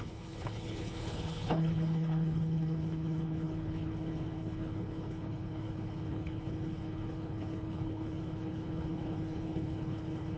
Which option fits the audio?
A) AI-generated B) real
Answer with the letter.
A